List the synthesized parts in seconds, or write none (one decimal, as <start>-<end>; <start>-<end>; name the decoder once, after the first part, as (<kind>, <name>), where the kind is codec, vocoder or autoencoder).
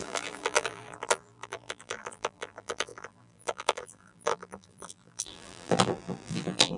0.0-6.8 (vocoder, BigVGAN v2)